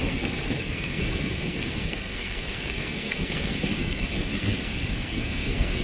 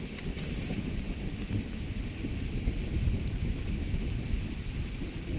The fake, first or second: first